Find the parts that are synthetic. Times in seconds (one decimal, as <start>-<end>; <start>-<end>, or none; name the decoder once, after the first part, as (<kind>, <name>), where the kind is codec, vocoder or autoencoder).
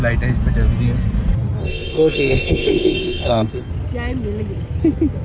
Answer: 1.6-3.7 (codec, ZipCodec)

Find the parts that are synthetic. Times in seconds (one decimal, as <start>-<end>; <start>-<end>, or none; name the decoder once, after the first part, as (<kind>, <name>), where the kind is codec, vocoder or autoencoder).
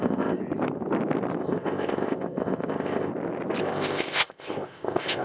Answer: 0.0-0.4 (codec, ZipCodec); 1.4-3.1; 3.6-5.2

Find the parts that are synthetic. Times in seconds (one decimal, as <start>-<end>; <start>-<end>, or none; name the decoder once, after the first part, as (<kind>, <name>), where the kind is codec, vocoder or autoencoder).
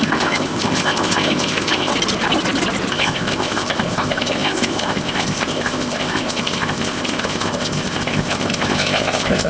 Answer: 0.0-1.9 (codec, ZipCodec); 2.9-9.5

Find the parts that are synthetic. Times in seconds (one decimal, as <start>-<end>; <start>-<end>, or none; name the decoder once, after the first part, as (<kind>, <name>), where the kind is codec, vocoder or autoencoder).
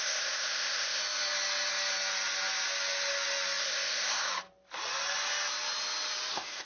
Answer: 0.0-1.0 (codec, ZipCodec); 3.6-4.3; 6.3-6.7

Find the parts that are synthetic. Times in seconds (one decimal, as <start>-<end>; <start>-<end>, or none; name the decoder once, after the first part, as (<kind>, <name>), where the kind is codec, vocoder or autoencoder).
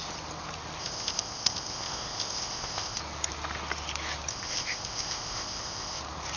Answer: 0.8-3.0 (codec, ZipCodec); 4.3-6.0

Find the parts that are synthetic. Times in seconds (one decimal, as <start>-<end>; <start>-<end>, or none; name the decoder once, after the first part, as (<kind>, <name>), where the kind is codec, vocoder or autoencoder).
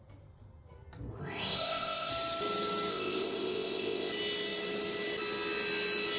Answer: 1.2-2.1 (codec, ZipCodec); 2.9-4.1